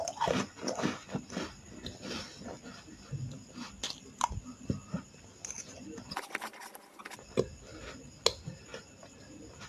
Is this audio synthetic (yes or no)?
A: no